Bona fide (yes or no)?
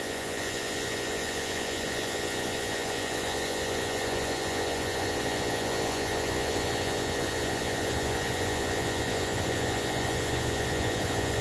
no